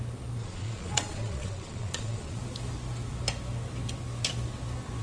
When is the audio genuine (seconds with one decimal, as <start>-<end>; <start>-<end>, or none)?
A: 0.0-0.4; 2.4-5.0